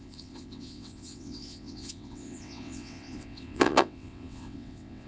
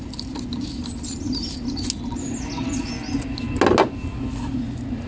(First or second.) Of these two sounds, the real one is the second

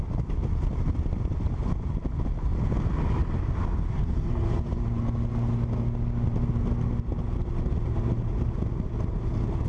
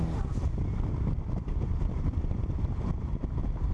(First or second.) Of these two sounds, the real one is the first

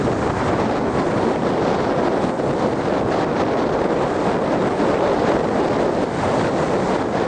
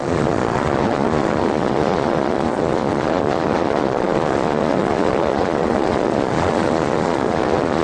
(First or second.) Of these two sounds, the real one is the first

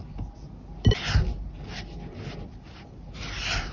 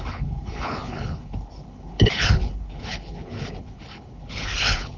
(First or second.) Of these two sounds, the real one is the first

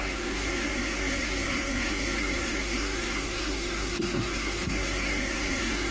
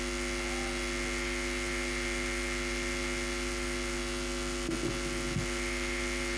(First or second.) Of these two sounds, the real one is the second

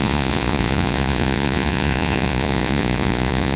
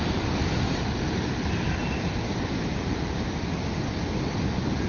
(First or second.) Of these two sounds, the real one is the second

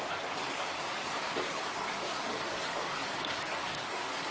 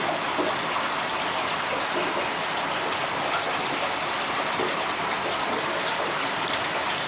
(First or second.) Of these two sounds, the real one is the second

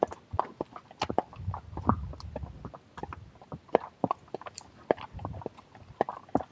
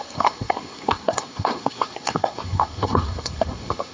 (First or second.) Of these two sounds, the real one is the first